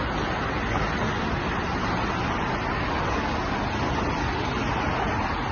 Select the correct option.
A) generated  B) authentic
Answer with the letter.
B